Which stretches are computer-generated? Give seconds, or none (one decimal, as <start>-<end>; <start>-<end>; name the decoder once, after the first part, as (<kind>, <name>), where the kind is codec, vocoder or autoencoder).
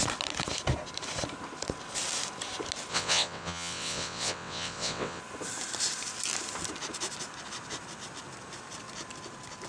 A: 2.9-5.2 (vocoder, WaveNeXt)